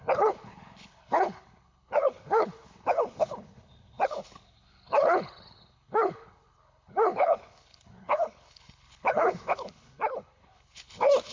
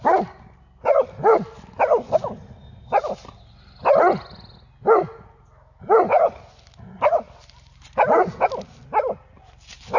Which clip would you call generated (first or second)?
first